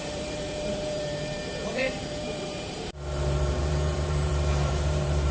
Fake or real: fake